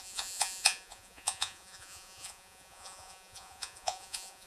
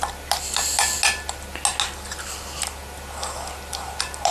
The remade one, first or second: first